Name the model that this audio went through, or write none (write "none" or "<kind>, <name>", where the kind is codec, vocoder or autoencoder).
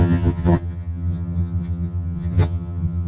vocoder, HiFi-GAN